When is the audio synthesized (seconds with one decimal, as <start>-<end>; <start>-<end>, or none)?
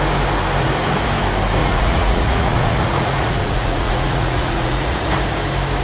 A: 1.6-5.1